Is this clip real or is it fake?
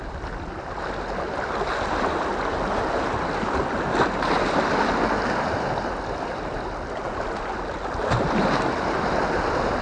real